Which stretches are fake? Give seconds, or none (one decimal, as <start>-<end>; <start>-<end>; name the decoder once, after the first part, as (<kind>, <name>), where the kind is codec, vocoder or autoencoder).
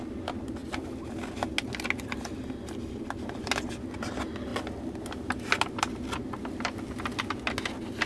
none